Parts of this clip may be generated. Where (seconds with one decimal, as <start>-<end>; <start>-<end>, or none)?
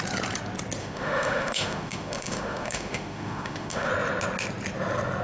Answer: 0.8-3.9